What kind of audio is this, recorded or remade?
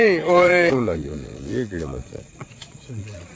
remade